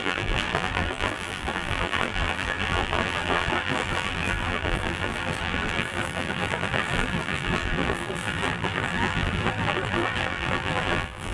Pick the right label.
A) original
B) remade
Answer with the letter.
B